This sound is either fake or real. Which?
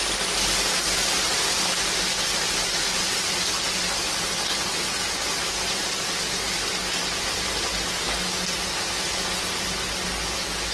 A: real